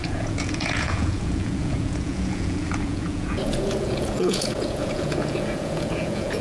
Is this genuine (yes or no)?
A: no